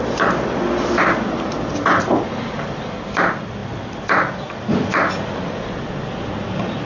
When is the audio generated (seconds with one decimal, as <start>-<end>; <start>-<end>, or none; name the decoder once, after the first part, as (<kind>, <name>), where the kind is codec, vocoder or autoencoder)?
none